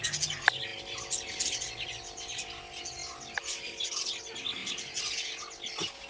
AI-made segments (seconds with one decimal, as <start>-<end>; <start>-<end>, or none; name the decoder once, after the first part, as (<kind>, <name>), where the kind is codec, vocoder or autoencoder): none